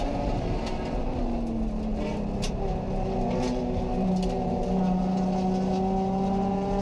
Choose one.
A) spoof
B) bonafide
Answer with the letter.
B